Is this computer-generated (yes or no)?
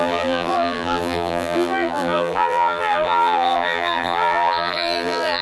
yes